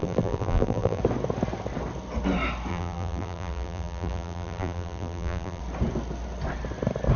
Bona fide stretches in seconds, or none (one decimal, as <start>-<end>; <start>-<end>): 1.0-2.7; 5.6-7.2